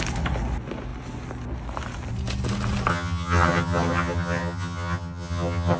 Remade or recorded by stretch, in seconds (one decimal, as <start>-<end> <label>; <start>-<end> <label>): 0.0-2.9 recorded; 2.9-5.8 remade